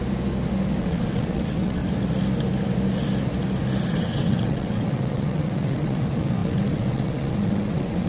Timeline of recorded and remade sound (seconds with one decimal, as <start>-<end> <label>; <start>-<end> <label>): 0.0-0.8 recorded; 0.8-1.8 remade; 1.8-3.9 recorded; 3.9-8.1 remade